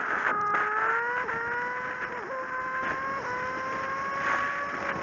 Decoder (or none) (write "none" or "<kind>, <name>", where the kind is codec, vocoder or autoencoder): none